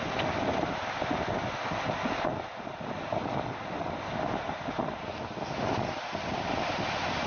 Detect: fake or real real